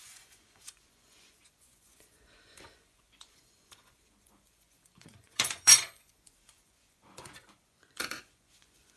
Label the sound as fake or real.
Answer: fake